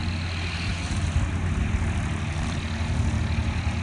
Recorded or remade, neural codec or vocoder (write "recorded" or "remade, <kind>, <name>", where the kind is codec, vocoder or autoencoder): recorded